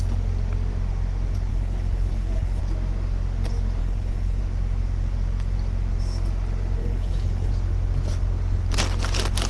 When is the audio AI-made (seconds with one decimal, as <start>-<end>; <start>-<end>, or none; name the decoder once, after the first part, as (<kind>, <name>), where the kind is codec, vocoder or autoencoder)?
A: 1.5-2.6 (codec, HILCodec); 3.8-4.4; 6.8-7.5